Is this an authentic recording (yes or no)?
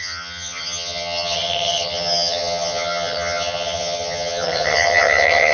no